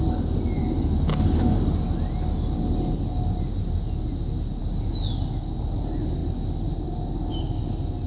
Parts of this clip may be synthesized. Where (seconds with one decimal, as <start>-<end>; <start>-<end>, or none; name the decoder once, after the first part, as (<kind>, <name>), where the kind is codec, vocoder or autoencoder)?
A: none